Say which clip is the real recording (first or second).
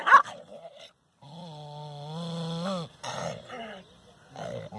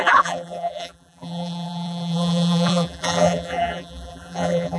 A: first